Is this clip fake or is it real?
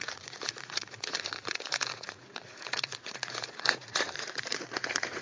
fake